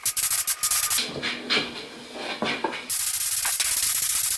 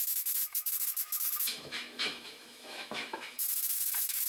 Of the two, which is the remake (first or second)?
second